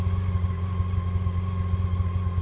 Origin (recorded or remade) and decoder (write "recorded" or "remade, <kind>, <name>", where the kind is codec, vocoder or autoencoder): recorded